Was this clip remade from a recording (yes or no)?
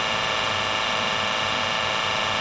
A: no